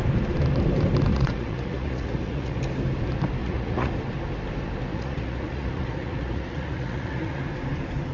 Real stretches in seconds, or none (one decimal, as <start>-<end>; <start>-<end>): 0.0-1.1; 2.6-3.4; 3.9-4.9; 7.4-8.1

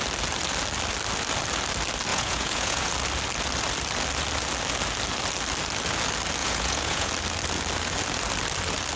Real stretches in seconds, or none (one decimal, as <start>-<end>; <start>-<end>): 0.0-2.1; 2.9-6.4; 7.1-9.0

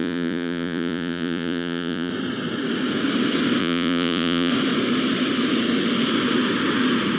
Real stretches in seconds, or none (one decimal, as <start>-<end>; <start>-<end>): 2.1-3.6; 4.5-7.2

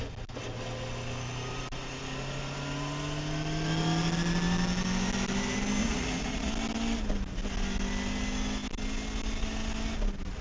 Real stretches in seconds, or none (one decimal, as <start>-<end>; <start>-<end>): 0.0-5.8; 6.5-10.4